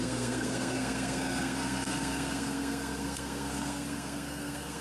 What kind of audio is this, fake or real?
fake